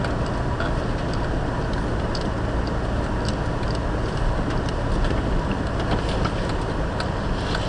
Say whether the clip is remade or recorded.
recorded